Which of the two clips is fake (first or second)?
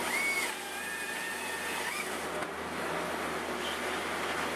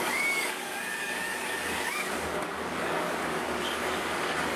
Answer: second